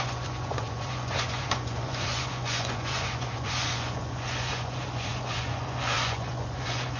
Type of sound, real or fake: fake